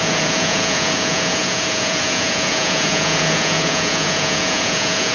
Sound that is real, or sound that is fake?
fake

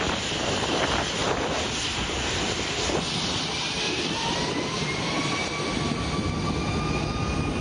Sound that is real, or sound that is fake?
real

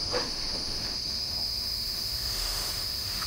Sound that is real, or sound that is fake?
fake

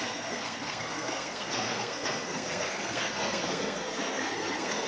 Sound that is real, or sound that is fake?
fake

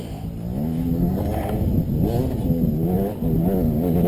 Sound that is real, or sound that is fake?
real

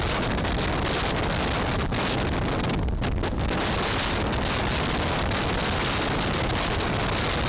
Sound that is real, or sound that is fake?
real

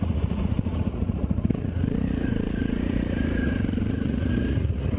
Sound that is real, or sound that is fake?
fake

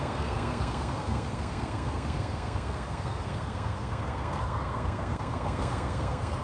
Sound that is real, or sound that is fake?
fake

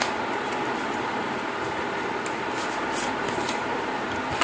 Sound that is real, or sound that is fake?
real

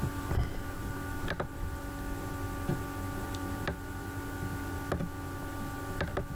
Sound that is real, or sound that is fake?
real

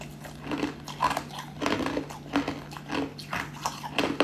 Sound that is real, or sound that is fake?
real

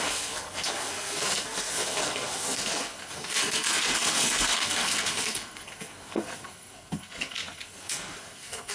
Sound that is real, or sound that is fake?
fake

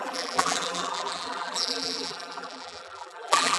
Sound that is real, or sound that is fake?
fake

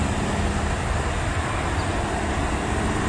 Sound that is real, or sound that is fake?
real